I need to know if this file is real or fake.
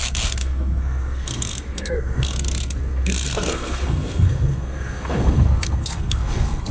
fake